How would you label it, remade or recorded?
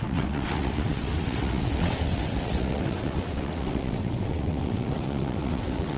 remade